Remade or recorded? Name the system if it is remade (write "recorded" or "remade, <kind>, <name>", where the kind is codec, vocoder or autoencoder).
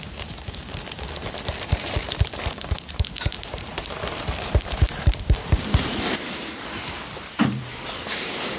remade, vocoder, BigVGAN v2